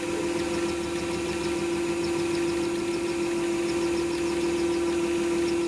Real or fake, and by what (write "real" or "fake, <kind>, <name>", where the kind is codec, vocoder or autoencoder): real